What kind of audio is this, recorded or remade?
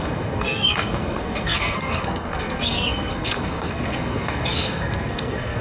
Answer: remade